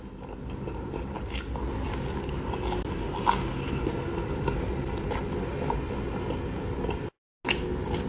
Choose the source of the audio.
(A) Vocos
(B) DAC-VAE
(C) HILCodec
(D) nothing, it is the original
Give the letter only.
D